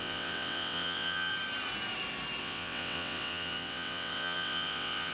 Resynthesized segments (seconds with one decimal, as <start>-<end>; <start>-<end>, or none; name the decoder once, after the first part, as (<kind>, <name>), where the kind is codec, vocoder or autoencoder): 0.0-1.3 (vocoder, WaveNeXt); 2.4-5.1